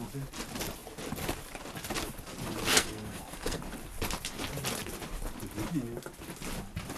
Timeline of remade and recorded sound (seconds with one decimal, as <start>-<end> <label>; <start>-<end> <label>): 0.0-2.7 recorded; 2.7-3.6 remade; 3.6-7.0 recorded